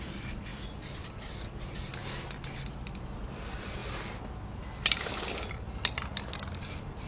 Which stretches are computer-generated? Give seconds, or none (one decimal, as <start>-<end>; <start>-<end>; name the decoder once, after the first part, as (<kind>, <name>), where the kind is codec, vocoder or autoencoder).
none